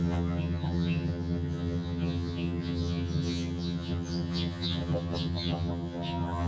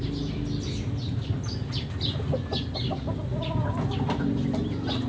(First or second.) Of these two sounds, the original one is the second